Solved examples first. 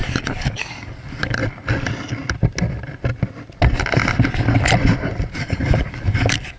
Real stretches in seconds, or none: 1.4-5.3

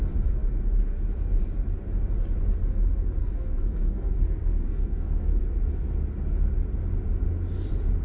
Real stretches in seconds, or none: 0.0-3.2; 5.4-8.0

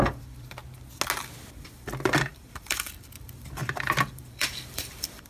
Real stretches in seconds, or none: 0.6-1.6